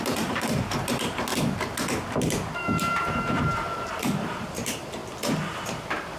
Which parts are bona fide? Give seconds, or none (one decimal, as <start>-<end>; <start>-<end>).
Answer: 1.3-2.8; 5.0-5.8